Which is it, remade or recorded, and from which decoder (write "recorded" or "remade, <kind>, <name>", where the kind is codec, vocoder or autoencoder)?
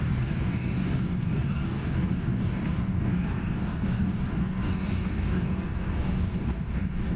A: remade, codec, DAC